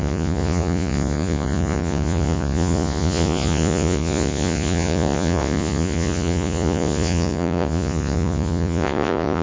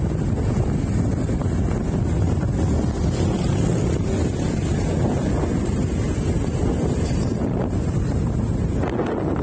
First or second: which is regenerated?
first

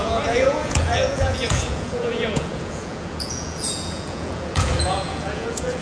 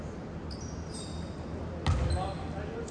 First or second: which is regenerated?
first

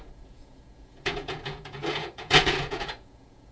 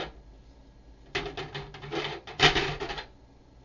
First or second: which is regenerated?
first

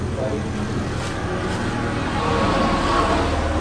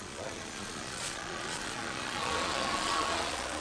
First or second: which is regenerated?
second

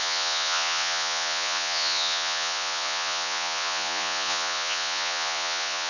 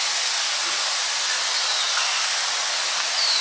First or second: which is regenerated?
first